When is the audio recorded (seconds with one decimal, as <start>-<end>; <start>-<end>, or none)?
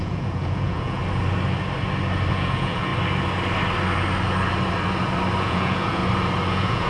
1.0-2.3; 2.9-5.4; 6.0-6.5